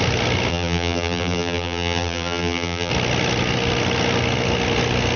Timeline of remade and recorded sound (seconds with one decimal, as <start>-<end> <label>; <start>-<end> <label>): 0.0-0.5 recorded; 0.5-2.9 remade; 2.9-5.2 recorded